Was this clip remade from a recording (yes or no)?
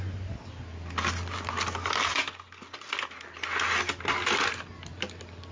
no